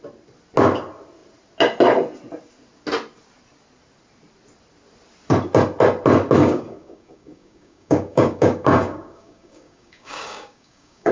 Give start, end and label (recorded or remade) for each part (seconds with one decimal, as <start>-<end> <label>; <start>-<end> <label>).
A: 0.0-6.4 recorded; 6.4-11.1 remade

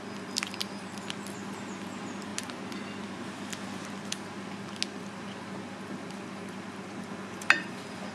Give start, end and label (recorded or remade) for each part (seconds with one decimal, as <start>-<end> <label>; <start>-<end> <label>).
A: 0.0-8.1 recorded

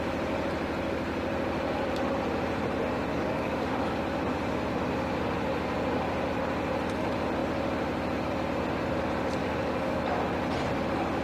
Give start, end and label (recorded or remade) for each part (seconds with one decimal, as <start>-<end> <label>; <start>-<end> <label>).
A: 0.0-3.1 recorded; 3.1-4.0 remade; 4.0-9.4 recorded; 9.4-10.0 remade; 10.0-11.2 recorded

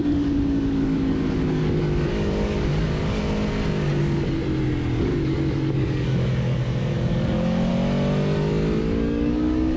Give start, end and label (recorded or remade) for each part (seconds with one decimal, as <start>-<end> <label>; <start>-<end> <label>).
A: 0.0-3.2 remade; 3.2-4.0 recorded; 4.0-4.4 remade; 4.4-5.0 recorded; 5.0-7.7 remade; 7.7-8.8 recorded; 8.8-9.8 remade

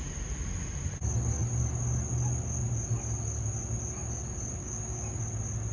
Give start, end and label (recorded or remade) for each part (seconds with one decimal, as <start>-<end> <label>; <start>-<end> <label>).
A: 0.0-4.6 recorded; 4.6-5.2 remade; 5.2-5.7 recorded

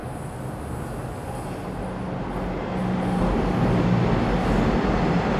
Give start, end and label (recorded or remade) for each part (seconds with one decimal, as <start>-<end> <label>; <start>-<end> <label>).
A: 0.0-5.4 recorded

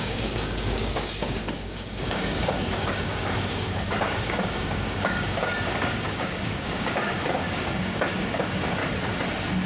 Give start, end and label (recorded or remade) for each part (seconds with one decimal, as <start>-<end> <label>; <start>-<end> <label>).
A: 0.0-8.8 remade; 8.8-9.7 recorded

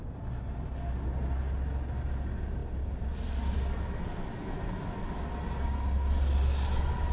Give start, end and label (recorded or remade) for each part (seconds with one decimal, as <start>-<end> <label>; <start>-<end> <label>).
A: 0.0-7.1 recorded